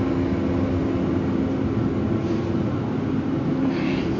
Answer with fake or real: real